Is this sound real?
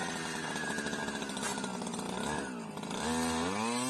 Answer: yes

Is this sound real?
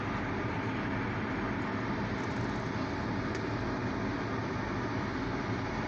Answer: yes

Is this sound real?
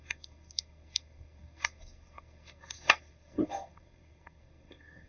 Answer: no